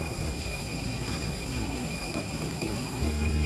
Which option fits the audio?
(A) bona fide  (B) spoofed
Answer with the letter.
B